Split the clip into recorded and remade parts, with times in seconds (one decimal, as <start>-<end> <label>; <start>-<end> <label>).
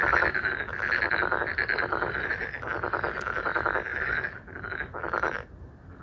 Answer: 0.0-6.0 recorded